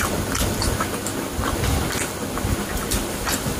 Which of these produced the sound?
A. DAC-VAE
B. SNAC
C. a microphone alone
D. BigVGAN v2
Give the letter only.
C